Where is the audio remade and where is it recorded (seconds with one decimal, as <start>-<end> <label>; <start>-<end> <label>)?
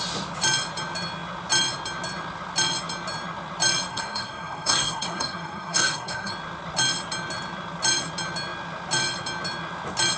0.0-3.9 recorded; 3.9-6.3 remade; 6.3-10.2 recorded